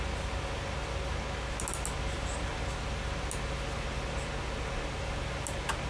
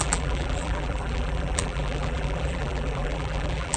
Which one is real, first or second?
first